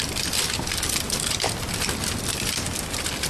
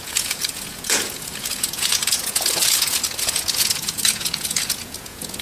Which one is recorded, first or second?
first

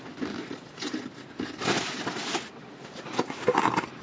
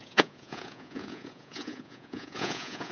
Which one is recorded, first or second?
first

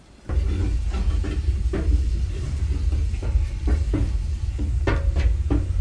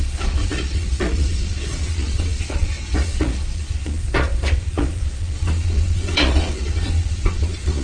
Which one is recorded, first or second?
first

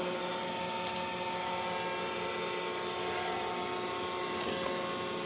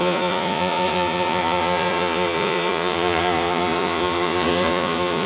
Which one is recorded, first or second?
first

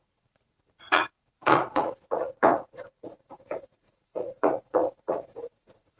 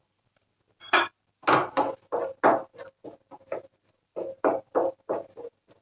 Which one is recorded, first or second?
second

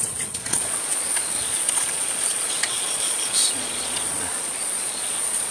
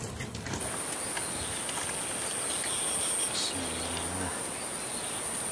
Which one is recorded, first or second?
second